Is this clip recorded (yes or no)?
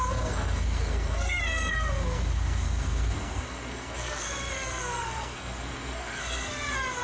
no